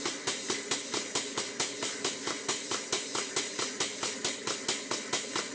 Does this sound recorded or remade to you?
recorded